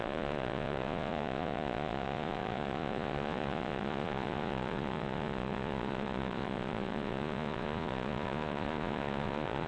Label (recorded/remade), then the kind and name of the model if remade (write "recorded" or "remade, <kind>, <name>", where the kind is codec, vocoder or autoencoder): remade, vocoder, Vocos